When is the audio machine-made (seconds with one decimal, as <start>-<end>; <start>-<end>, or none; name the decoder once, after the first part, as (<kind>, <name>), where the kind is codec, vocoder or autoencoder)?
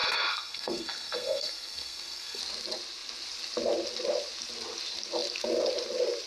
0.0-2.4 (codec, SNAC)